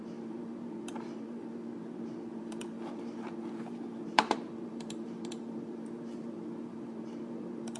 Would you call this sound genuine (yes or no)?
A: no